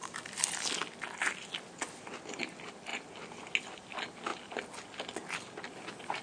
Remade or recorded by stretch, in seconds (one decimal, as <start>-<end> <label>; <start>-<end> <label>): 0.0-6.2 recorded